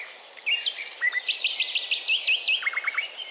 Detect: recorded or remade recorded